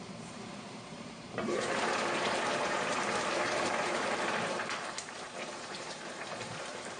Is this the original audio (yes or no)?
no